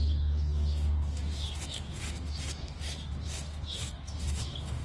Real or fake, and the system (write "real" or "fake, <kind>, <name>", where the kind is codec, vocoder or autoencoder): fake, codec, DAC